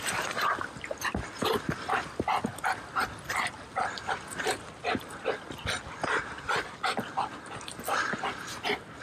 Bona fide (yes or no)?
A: yes